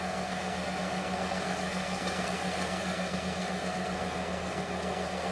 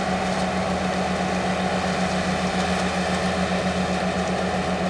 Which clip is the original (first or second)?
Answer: second